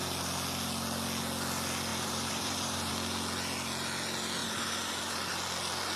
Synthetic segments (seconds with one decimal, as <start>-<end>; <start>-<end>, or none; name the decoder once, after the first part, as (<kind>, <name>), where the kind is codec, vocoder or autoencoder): 1.9-2.9 (vocoder, BigVGAN v2); 4.4-5.3